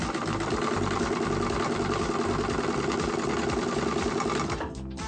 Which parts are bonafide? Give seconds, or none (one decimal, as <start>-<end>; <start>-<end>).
0.0-5.1